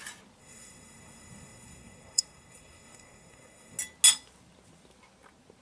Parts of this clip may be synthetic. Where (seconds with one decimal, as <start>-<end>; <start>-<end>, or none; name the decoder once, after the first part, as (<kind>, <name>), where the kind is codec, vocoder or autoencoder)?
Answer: 0.4-3.8 (codec, SNAC)